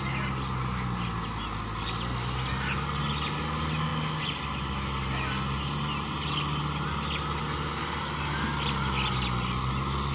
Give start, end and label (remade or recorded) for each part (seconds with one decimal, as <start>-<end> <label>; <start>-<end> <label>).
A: 0.0-10.1 recorded